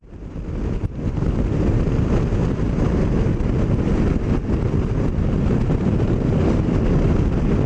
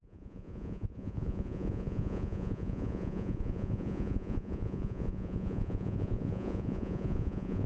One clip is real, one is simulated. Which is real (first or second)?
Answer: first